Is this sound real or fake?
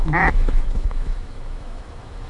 fake